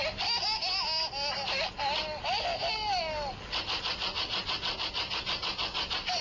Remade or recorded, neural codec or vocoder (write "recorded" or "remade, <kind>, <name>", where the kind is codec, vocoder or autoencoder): recorded